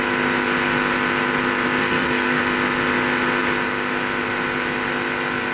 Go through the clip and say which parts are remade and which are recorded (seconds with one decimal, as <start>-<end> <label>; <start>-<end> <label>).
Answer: 0.0-1.8 recorded; 1.8-2.4 remade; 2.4-5.5 recorded